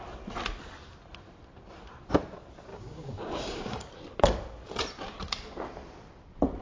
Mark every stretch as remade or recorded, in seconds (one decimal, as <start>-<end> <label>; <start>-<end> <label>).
0.0-2.7 recorded; 2.7-3.9 remade; 3.9-6.6 recorded